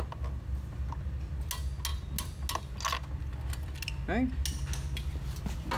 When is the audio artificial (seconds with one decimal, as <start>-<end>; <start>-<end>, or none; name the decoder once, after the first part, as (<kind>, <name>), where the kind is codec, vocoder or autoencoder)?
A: none